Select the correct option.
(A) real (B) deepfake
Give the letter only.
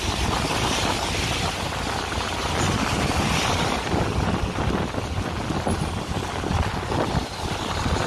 A